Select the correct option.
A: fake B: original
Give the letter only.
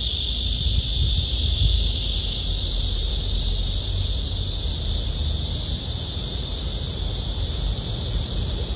B